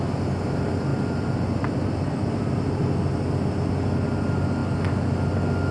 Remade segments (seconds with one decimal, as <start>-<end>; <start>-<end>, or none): 0.9-2.8